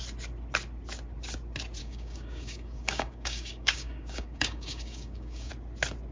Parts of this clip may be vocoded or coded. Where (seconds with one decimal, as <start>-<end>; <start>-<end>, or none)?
1.8-5.5